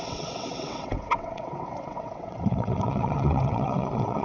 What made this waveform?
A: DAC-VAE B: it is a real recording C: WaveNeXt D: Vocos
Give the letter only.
C